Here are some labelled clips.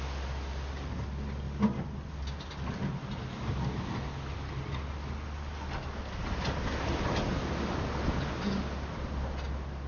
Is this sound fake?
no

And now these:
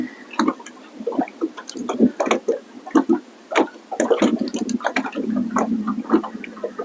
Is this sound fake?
no